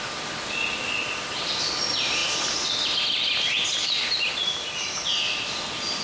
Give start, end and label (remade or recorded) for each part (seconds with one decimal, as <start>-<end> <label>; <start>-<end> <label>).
0.0-6.0 recorded